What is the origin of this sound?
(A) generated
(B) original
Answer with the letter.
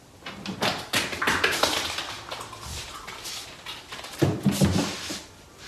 B